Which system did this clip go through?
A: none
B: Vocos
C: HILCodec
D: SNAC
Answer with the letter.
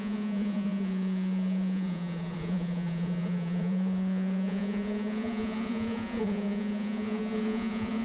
B